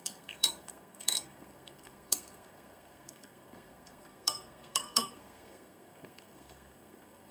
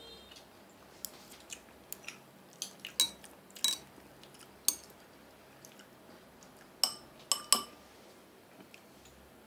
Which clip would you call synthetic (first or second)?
first